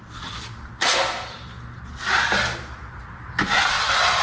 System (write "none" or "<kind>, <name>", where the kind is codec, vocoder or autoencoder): none